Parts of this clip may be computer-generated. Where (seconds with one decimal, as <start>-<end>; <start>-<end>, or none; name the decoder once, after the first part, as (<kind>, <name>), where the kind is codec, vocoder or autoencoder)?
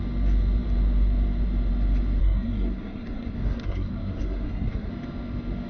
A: 2.2-4.9 (codec, SNAC)